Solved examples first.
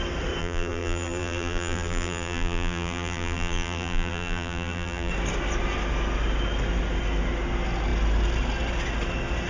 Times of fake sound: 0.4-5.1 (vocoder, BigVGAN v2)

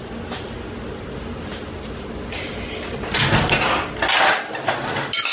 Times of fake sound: none

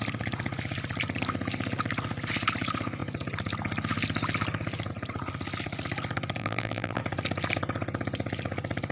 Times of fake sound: 6.4-7.0 (vocoder, BigVGAN v2)

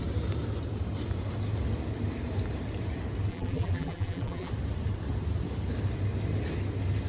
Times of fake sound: 3.3-4.5 (vocoder, BigVGAN v2)